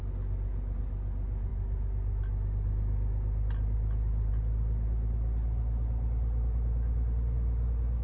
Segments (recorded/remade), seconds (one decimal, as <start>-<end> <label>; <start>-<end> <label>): 0.0-8.0 recorded